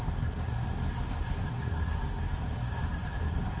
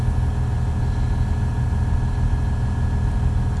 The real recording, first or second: second